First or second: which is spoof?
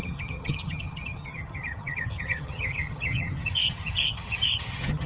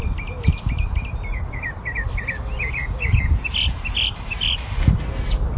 first